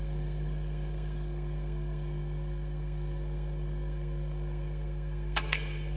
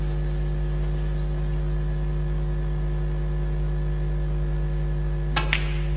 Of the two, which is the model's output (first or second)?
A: first